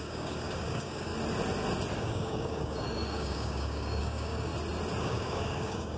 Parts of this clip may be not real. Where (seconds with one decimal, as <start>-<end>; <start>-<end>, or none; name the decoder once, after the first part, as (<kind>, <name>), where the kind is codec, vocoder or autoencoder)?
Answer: 0.0-1.1 (codec, DAC); 2.0-4.5; 5.0-6.0